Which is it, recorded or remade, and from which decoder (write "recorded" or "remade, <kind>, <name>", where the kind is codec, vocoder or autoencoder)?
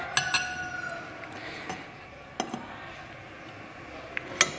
recorded